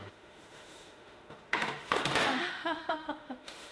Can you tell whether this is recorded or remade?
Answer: remade